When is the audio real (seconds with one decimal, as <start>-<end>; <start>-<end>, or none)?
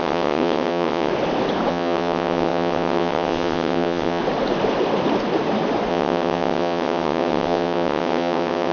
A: 1.1-1.7; 4.2-5.9